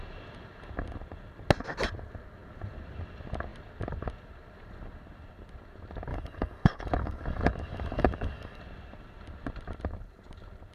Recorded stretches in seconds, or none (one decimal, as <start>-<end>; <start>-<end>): 0.0-6.1; 8.6-10.7